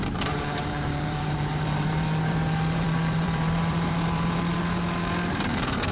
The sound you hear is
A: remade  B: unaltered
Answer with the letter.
A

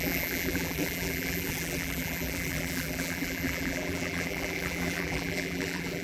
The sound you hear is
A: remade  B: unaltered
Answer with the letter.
A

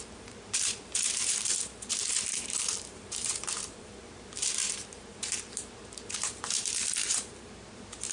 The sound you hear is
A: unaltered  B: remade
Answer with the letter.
B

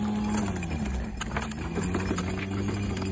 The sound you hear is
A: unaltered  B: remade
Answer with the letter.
A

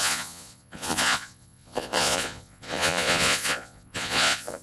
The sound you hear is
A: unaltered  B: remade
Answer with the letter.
B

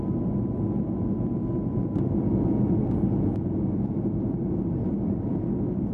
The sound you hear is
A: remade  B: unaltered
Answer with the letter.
B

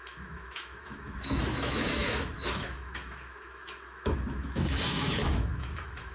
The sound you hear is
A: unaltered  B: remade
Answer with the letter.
B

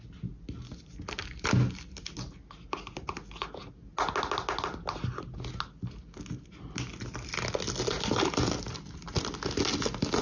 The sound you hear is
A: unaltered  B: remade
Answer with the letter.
A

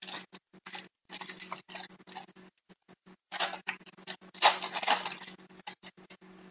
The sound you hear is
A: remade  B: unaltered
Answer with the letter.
B